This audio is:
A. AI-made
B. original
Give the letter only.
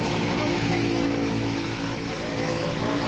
A